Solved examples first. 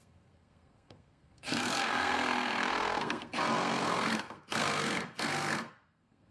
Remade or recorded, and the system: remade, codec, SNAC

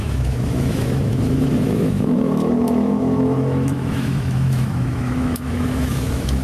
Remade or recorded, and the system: remade, autoencoder, DAC-VAE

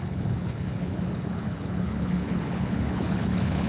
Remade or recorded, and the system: remade, codec, HILCodec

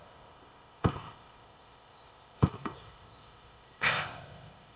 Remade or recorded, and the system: remade, codec, ZipCodec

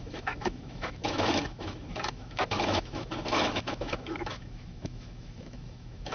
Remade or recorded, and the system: remade, autoencoder, DAC-VAE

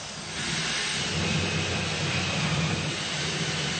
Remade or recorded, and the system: recorded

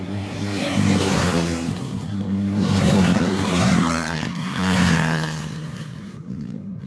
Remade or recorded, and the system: remade, codec, SNAC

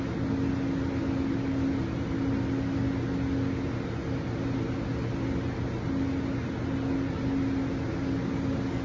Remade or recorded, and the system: recorded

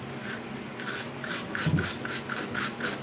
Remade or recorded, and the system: recorded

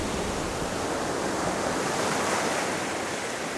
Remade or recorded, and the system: recorded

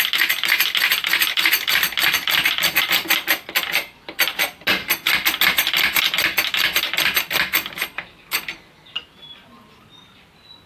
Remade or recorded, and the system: recorded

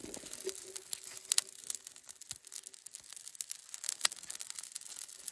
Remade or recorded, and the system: recorded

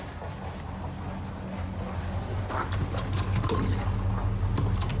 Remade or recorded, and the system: recorded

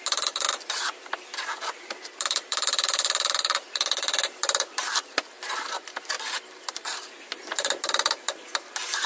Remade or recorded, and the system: remade, vocoder, BigVGAN v2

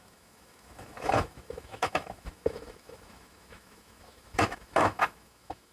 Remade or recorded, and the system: remade, autoencoder, DAC-VAE